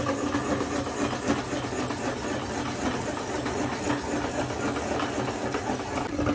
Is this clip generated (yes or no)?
no